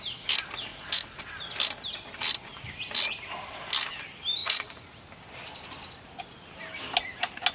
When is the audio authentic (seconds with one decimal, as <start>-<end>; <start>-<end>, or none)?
0.0-0.7; 1.2-4.4; 5.0-7.5